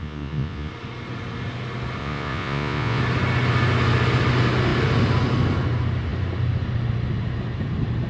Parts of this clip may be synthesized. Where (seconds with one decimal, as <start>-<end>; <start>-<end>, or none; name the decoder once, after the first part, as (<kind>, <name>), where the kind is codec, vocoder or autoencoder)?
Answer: 0.0-0.7 (vocoder, Vocos); 2.0-3.0

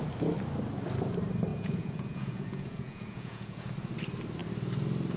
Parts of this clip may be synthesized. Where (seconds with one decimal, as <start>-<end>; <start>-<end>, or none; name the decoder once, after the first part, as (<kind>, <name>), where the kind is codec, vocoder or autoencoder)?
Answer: 1.5-3.7 (vocoder, Vocos)

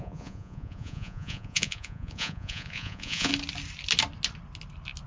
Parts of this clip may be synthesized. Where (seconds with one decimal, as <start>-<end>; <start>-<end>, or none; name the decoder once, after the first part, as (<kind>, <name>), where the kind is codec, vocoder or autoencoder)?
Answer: 0.0-3.3 (vocoder, Vocos)

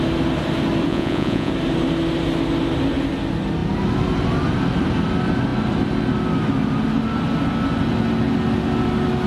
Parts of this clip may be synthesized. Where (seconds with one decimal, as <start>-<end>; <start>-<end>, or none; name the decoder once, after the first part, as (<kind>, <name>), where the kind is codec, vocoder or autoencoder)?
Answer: 0.9-1.5 (vocoder, Vocos)

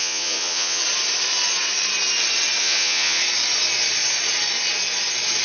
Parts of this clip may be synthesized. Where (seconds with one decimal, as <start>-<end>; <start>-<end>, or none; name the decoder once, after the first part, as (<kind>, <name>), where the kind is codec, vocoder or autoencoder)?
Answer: 0.0-0.8 (vocoder, Vocos); 2.6-3.2